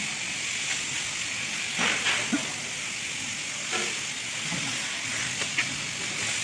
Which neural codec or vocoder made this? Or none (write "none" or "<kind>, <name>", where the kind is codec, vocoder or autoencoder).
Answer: none